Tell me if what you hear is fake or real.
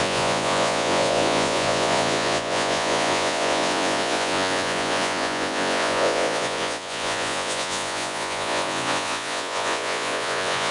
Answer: fake